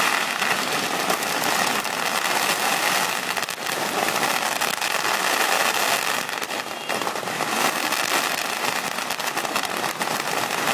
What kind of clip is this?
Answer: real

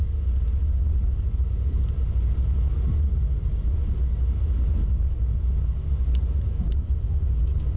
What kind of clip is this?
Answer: real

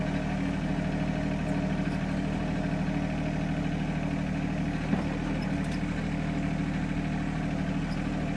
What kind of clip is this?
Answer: real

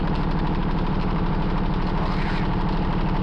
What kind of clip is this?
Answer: fake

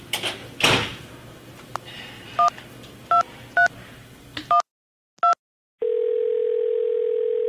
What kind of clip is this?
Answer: real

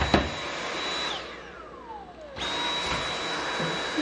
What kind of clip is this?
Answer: real